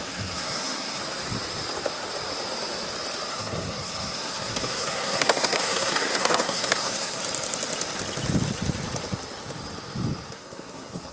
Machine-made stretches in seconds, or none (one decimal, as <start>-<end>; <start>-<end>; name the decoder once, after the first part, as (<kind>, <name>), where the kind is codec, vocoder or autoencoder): 0.0-1.0 (codec, SNAC); 3.3-7.2; 10.3-11.1